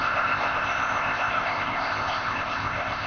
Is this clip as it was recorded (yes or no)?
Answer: no